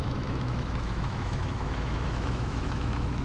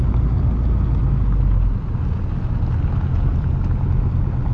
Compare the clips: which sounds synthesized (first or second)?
first